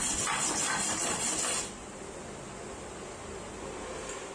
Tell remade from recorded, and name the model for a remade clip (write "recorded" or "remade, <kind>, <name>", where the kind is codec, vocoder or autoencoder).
recorded